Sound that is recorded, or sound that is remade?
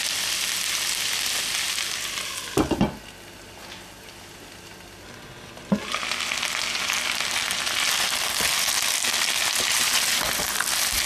recorded